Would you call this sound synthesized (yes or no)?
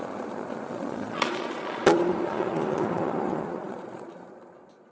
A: yes